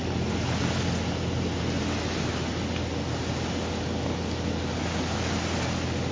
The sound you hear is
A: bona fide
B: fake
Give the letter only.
A